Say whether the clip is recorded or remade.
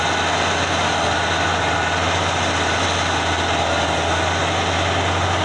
recorded